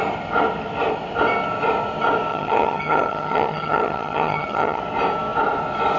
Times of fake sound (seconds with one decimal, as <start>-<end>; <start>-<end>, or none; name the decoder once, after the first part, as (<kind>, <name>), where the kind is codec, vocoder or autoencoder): 2.3-4.8 (vocoder, HiFi-GAN)